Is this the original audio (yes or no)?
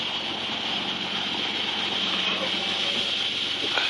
yes